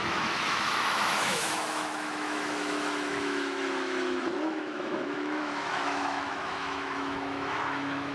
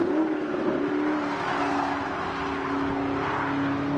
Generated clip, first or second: first